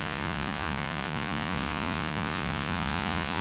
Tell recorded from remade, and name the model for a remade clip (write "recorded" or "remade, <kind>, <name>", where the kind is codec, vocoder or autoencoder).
remade, vocoder, Vocos